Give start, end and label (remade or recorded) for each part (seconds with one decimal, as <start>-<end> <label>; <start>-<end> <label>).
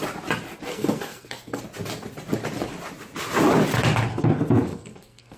0.0-0.7 recorded; 0.7-1.6 remade; 1.6-4.1 recorded; 4.1-5.4 remade